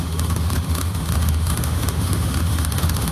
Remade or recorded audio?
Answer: remade